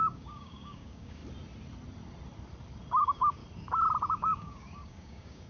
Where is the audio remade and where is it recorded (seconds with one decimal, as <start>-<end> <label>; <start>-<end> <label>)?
0.0-1.2 remade; 1.2-3.0 recorded; 3.0-3.4 remade; 3.4-4.1 recorded; 4.1-5.5 remade